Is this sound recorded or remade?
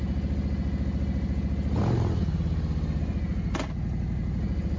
recorded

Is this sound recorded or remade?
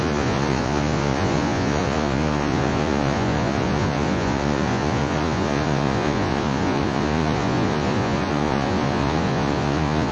remade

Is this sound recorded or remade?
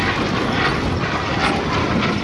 recorded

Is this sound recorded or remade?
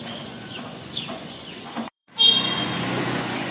remade